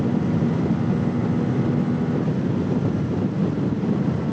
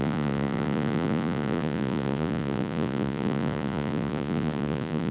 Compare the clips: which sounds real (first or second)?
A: first